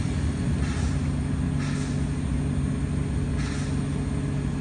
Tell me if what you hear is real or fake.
real